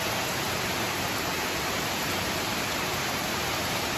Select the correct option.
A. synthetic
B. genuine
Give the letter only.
A